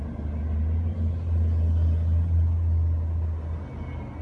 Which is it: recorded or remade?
recorded